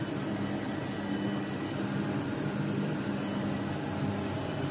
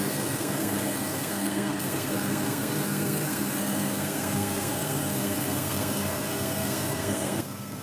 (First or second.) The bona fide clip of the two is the first